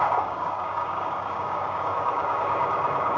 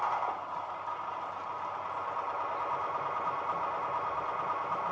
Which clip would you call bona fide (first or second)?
second